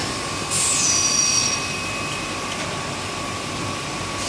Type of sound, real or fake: real